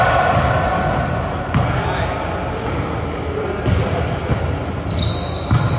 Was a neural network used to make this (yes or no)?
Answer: no